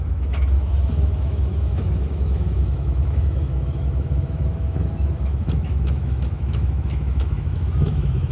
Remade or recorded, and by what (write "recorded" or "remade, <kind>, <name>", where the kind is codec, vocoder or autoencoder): remade, autoencoder, DAC-VAE